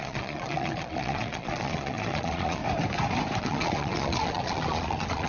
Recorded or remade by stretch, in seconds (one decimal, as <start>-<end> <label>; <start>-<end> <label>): 0.0-2.6 remade; 2.6-3.4 recorded; 3.4-5.3 remade